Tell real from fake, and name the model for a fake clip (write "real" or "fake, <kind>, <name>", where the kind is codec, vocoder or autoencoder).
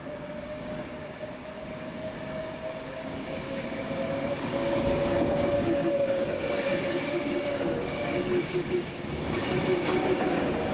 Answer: fake, codec, DAC